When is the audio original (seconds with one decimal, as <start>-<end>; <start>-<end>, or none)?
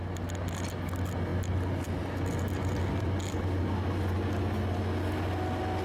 0.0-5.8